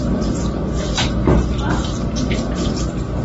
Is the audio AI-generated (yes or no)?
yes